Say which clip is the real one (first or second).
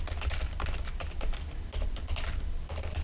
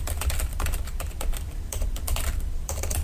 first